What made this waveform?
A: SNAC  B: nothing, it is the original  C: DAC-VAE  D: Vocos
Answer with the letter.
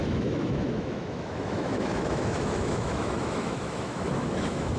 C